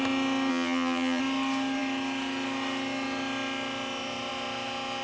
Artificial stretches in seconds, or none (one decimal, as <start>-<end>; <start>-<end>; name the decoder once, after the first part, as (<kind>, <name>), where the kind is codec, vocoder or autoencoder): 0.5-1.2 (vocoder, HiFi-GAN)